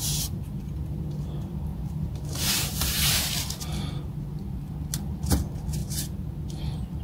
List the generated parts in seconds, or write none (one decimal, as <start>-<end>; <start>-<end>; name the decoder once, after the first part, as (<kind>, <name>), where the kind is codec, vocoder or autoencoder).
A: 1.7-3.1 (vocoder, BigVGAN v2)